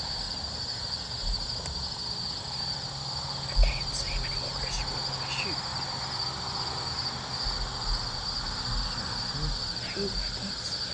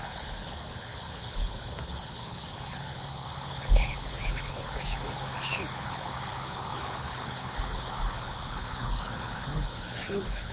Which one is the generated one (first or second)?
second